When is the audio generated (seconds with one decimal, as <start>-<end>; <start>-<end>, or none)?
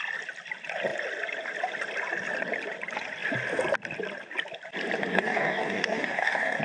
5.1-6.6